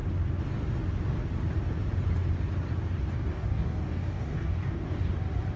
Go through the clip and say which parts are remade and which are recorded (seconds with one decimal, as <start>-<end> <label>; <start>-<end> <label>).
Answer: 0.0-3.3 recorded; 3.3-5.1 remade; 5.1-5.6 recorded